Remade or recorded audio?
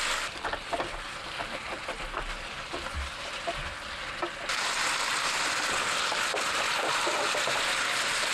recorded